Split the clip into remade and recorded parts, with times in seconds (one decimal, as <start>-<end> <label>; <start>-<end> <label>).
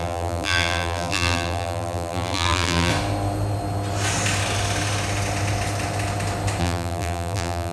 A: 0.0-2.9 remade; 2.9-6.6 recorded; 6.6-7.7 remade